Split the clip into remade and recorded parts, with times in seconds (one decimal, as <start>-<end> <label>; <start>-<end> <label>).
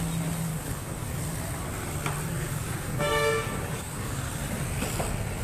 0.0-0.5 recorded; 0.5-1.2 remade; 1.2-2.4 recorded; 2.4-4.3 remade; 4.3-5.4 recorded